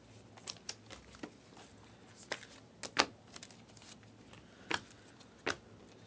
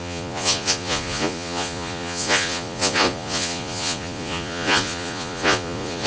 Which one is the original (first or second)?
first